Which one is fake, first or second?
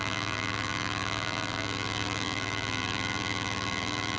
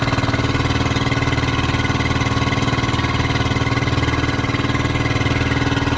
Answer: first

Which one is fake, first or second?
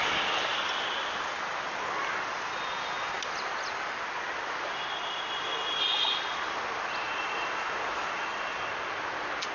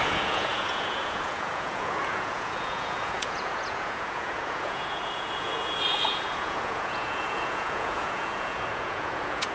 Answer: second